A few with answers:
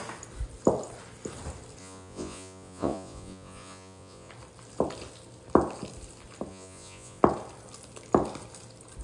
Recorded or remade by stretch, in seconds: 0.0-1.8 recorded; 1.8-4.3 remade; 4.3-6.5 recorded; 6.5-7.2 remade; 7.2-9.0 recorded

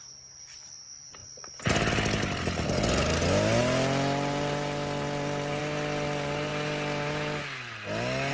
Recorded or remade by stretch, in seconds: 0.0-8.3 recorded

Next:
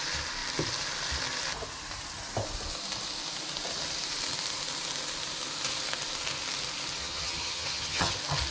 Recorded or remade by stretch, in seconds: 0.0-7.0 recorded; 7.0-8.1 remade; 8.1-8.5 recorded